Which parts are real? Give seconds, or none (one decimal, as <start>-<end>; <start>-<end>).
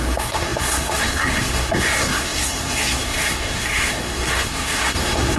none